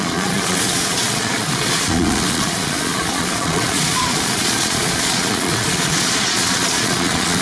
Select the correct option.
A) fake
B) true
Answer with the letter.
A